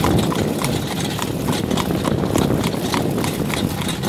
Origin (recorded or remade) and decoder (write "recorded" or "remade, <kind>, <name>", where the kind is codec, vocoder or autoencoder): recorded